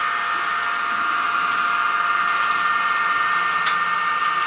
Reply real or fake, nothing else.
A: real